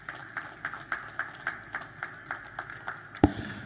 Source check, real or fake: real